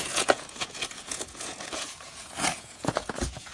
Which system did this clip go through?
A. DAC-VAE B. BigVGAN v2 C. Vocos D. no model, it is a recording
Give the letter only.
C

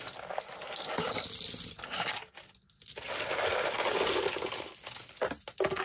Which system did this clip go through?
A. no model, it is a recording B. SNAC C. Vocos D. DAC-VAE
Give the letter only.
A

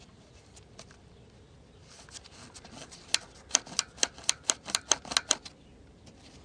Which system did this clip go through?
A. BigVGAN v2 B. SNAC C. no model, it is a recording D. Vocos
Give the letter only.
C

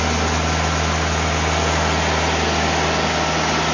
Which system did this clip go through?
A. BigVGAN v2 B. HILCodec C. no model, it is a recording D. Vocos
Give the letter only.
C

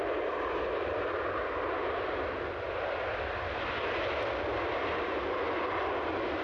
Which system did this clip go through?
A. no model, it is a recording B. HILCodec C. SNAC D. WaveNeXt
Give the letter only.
A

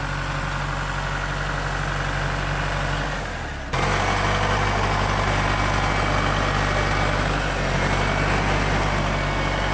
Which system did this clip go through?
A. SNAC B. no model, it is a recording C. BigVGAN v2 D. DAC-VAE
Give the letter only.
B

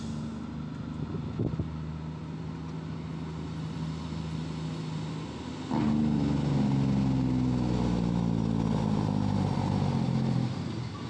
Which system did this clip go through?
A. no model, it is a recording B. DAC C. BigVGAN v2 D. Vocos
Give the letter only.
A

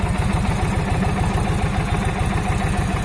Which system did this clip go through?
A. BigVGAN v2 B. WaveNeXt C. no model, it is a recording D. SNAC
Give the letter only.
C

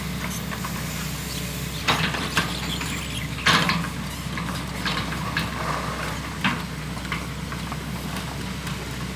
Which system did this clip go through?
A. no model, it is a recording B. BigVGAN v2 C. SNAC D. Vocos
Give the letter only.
A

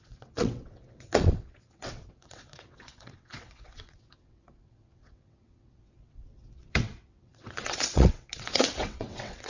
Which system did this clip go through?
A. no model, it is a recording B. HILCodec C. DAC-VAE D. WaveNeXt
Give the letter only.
D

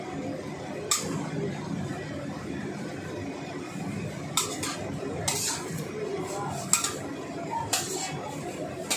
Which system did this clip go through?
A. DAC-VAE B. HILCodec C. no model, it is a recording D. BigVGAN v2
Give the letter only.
C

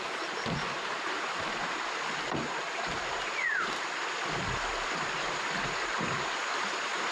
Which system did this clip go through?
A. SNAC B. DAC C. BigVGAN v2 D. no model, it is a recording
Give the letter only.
C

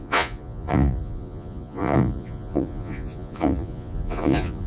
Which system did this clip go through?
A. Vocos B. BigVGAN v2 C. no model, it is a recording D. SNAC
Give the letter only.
A